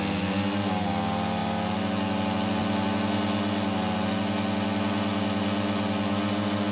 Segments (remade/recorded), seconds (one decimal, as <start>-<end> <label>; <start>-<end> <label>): 0.0-6.7 recorded